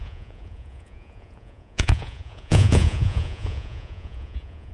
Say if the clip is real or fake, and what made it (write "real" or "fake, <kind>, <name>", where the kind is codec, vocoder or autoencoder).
fake, vocoder, Vocos